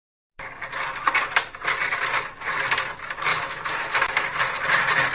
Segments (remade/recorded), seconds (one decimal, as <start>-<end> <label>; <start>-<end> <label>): 0.0-3.3 recorded; 3.3-4.4 remade; 4.4-5.1 recorded

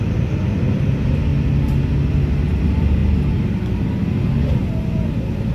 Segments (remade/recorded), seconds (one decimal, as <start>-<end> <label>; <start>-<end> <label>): 0.0-1.3 remade; 1.3-2.6 recorded; 2.6-3.0 remade; 3.0-4.8 recorded; 4.8-5.5 remade

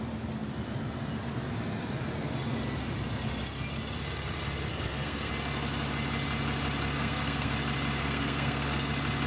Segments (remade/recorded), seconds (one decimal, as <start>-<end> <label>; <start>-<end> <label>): 0.0-4.7 recorded; 4.7-5.3 remade; 5.3-6.9 recorded; 6.9-7.5 remade; 7.5-8.0 recorded; 8.0-8.9 remade; 8.9-9.3 recorded

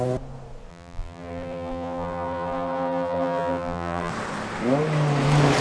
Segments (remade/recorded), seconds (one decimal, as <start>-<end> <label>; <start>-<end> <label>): 0.0-0.7 recorded; 0.7-4.1 remade; 4.1-5.6 recorded

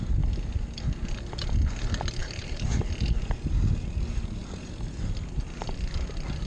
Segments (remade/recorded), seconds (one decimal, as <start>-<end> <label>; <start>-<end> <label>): 0.0-2.2 recorded; 2.2-3.1 remade; 3.1-6.5 recorded